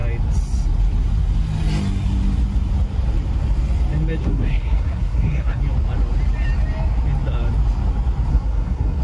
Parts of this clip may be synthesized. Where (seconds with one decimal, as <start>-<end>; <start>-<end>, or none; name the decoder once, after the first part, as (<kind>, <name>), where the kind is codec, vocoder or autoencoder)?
4.2-5.6 (codec, SNAC); 8.3-9.0